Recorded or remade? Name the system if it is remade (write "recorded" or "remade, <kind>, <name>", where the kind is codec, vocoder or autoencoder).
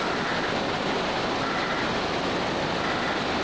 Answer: recorded